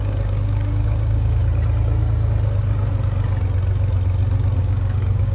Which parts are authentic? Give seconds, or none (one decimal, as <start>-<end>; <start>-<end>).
1.4-4.6

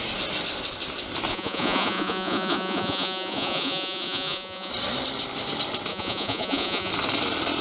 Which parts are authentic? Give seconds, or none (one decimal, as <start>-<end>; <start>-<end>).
0.0-1.3; 4.7-5.9; 6.9-7.6

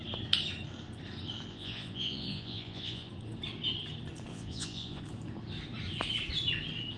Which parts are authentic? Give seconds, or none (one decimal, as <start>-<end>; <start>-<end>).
0.0-1.5; 3.1-4.3; 5.0-7.0